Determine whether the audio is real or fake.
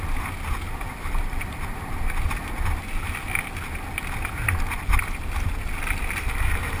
real